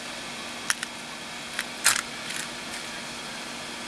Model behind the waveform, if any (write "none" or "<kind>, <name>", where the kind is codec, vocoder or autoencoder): none